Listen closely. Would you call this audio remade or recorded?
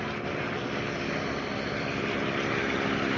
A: recorded